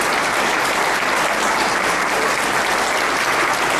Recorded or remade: recorded